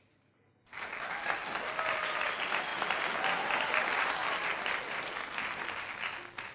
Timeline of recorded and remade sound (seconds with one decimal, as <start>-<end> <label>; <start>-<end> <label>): 0.0-6.5 recorded